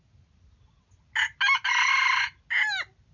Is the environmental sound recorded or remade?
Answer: recorded